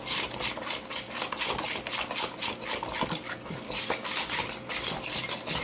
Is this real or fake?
real